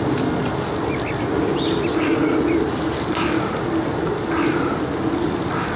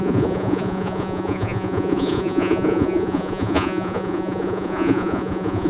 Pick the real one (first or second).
first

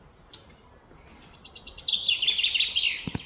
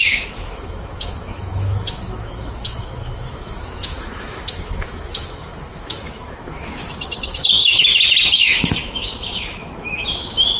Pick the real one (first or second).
first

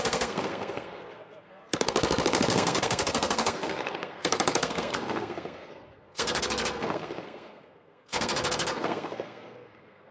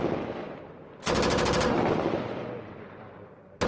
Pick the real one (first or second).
second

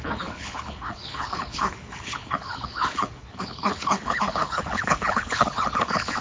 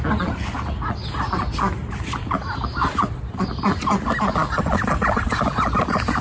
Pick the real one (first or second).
second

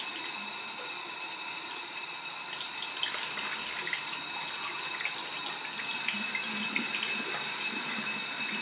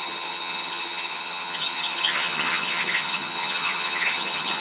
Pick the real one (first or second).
first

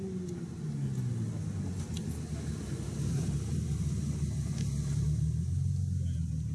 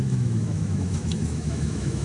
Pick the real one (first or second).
first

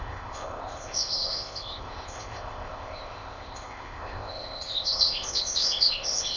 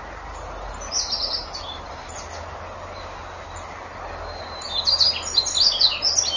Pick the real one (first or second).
second